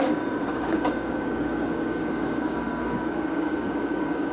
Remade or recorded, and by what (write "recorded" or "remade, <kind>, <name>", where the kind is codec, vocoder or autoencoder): remade, codec, DAC